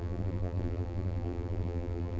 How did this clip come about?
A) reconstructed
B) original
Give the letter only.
A